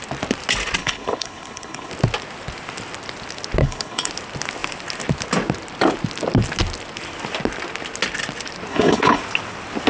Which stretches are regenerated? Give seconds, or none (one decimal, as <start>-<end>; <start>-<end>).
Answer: 0.8-1.9; 3.6-4.1; 8.7-9.2